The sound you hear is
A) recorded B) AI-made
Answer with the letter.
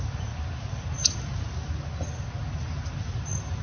A